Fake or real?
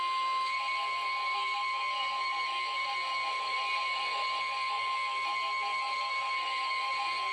fake